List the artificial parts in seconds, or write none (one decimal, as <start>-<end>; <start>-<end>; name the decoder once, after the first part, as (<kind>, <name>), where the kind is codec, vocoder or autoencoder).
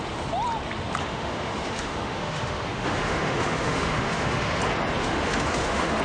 1.0-4.6 (autoencoder, DAC-VAE); 5.0-6.0